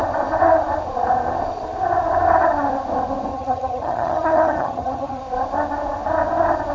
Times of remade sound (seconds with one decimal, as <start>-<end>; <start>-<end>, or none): 3.3-5.2